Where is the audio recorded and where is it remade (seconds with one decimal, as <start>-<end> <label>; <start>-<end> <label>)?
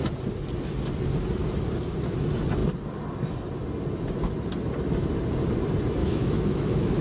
0.0-6.0 recorded; 6.0-7.0 remade